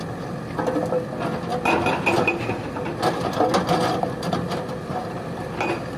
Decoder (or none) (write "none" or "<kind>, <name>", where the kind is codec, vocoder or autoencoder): none